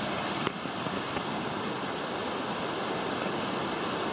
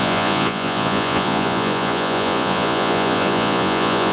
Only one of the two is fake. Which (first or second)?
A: second